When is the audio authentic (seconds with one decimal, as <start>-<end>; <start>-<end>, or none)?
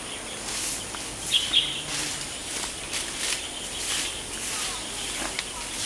0.0-5.9